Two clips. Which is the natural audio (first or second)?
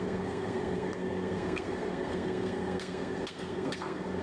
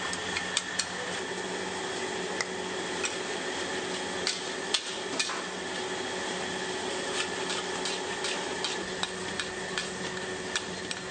second